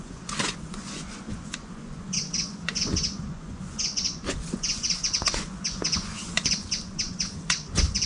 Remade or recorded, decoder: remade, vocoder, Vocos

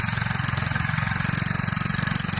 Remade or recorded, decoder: recorded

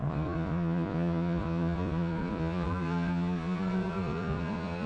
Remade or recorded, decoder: remade, vocoder, Vocos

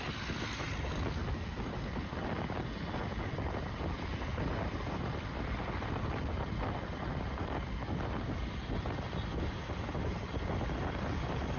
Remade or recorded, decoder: recorded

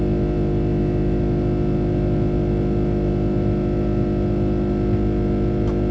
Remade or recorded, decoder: recorded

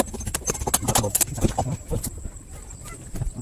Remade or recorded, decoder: recorded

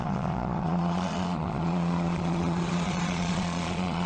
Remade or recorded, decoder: remade, vocoder, Vocos